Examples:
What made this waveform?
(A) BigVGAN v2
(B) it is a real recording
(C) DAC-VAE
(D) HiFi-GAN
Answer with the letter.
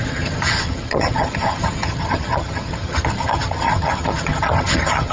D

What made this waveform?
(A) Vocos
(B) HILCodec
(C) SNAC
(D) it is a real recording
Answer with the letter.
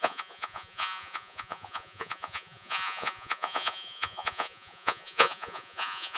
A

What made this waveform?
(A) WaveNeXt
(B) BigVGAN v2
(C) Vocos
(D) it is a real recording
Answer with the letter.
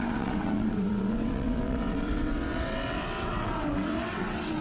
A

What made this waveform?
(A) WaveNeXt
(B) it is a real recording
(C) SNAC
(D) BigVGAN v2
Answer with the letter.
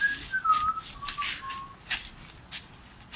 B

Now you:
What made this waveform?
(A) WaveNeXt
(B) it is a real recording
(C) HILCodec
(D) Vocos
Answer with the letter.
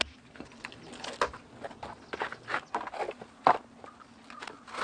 B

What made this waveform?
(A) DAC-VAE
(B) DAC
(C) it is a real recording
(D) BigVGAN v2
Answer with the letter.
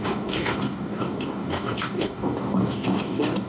B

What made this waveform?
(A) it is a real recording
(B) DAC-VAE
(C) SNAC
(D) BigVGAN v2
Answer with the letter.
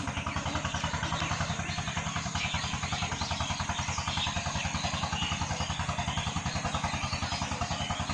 A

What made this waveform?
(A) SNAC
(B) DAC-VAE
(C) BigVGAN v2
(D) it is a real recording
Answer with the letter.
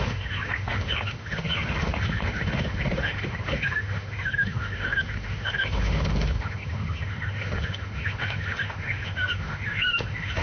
B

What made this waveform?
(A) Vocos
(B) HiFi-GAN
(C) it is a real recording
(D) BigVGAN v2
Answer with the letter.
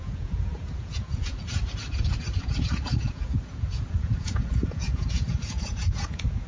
A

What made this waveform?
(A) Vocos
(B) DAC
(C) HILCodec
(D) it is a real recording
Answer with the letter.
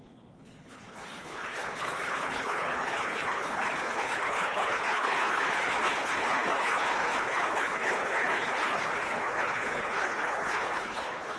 C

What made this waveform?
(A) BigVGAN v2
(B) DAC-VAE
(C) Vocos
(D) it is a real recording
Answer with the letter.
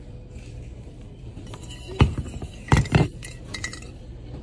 A